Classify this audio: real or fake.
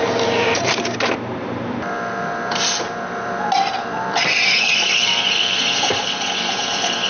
fake